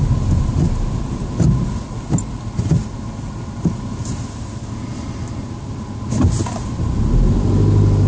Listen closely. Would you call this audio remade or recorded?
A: recorded